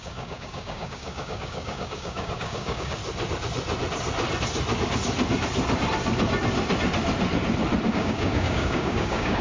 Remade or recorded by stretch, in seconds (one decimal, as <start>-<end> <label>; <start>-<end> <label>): 0.0-3.0 remade; 3.0-7.9 recorded; 7.9-9.4 remade